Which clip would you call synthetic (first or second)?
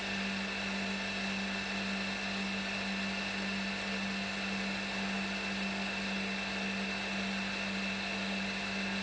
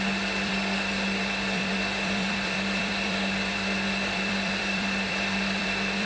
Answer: second